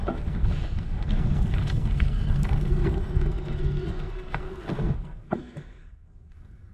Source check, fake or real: fake